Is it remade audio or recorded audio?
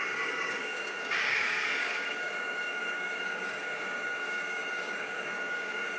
remade